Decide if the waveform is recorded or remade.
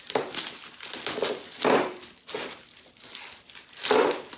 recorded